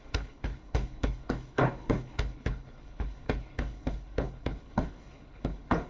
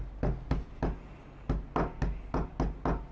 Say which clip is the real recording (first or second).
second